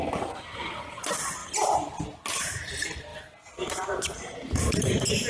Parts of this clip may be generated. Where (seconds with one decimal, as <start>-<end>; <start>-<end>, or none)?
none